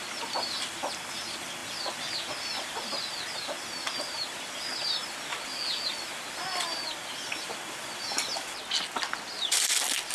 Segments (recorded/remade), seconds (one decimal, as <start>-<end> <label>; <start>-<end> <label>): 0.0-10.1 recorded